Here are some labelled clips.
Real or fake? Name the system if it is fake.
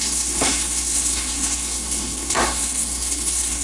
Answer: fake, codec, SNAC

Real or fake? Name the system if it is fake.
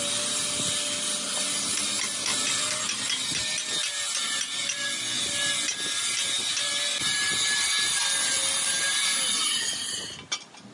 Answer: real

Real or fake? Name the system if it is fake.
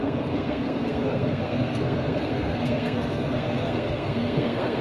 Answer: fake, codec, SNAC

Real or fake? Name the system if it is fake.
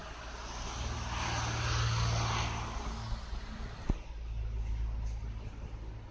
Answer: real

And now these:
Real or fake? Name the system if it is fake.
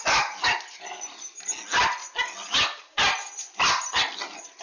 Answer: real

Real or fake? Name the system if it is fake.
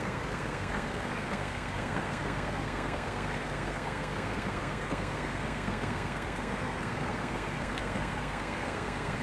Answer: fake, codec, SNAC